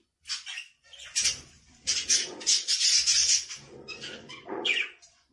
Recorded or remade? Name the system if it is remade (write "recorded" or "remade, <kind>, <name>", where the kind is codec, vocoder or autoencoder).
remade, vocoder, Vocos